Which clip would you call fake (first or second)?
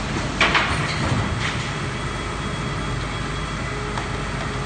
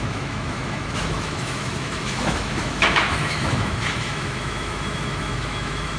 second